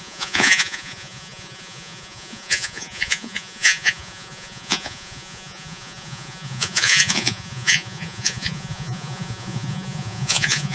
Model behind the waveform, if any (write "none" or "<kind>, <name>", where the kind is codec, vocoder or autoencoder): vocoder, Vocos